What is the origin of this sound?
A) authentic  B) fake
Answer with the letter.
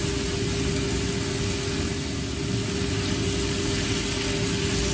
A